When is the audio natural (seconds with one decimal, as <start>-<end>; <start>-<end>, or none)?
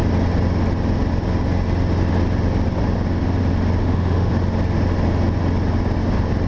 0.0-3.8; 4.3-6.5